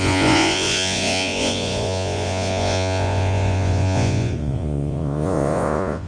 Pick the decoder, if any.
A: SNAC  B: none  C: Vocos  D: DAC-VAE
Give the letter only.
C